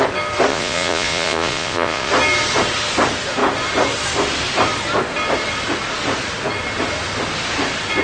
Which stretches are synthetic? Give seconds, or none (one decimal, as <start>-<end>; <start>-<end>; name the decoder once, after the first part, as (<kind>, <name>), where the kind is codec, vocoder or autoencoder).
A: 0.5-2.1 (vocoder, Vocos)